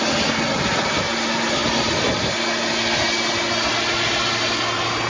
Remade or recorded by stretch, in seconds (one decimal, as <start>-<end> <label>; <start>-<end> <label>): 0.0-5.1 recorded